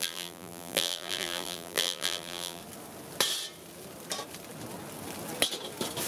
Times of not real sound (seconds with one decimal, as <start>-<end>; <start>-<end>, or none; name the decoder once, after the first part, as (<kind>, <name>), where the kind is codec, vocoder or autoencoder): 0.0-2.6 (vocoder, BigVGAN v2)